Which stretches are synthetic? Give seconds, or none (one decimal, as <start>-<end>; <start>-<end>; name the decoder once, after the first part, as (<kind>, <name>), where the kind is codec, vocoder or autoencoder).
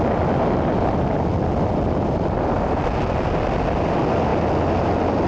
none